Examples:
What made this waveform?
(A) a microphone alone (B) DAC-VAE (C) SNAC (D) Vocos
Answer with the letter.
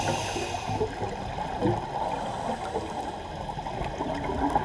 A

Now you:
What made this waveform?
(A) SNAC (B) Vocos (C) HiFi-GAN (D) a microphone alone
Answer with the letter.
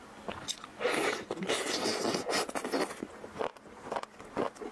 D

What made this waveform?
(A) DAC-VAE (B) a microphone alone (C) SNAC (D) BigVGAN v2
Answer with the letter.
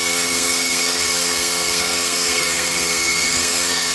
C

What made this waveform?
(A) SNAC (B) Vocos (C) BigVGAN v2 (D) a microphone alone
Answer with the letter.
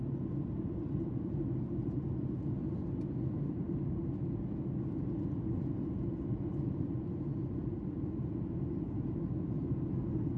D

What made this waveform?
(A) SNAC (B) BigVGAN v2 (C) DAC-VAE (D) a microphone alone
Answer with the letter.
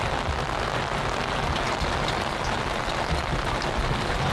D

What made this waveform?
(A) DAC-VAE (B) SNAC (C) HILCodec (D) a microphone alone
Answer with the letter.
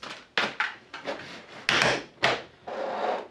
D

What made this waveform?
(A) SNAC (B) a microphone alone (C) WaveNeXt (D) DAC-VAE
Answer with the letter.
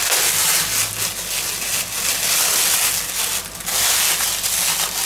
B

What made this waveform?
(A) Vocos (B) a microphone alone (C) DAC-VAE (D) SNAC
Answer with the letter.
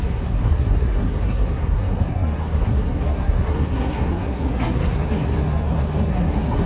D